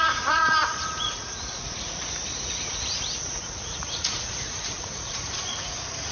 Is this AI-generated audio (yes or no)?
yes